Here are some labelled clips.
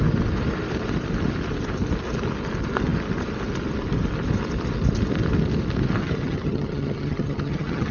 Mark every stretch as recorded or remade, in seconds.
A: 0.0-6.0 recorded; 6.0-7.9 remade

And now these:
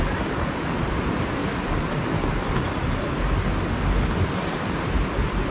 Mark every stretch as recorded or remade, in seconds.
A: 0.0-5.5 recorded

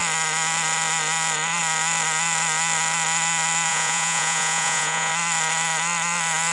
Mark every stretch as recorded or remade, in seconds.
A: 0.0-3.7 recorded; 3.7-5.1 remade; 5.1-6.5 recorded

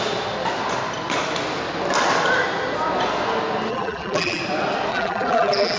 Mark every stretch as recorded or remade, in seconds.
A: 0.0-3.7 recorded; 3.7-4.4 remade; 4.4-4.9 recorded; 4.9-5.8 remade

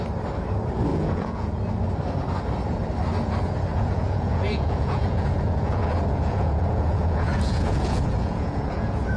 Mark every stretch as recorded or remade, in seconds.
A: 0.0-0.9 recorded; 0.9-1.6 remade; 1.6-3.7 recorded; 3.7-9.2 remade

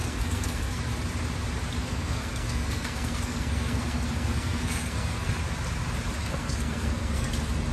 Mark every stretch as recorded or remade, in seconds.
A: 0.0-0.8 remade; 0.8-1.8 recorded; 1.8-5.4 remade; 5.4-6.2 recorded; 6.2-7.3 remade; 7.3-7.7 recorded